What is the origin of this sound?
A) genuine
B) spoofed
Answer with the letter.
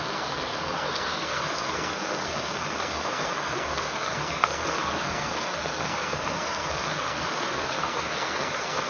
B